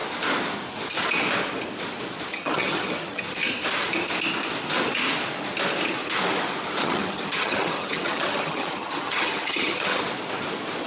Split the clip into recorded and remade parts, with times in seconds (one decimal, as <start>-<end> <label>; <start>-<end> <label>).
0.0-2.3 recorded; 2.3-3.2 remade; 3.2-6.8 recorded; 6.8-10.0 remade; 10.0-10.9 recorded